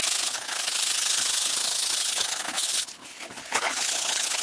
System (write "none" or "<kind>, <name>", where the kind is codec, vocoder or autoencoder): codec, HILCodec